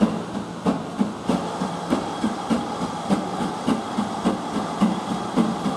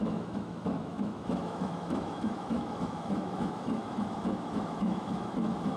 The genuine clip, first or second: first